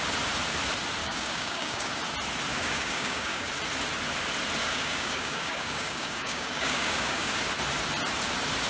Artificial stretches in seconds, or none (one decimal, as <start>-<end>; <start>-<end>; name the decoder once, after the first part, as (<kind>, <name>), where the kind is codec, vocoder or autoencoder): 1.0-1.9 (codec, DAC); 2.5-3.5; 4.6-7.4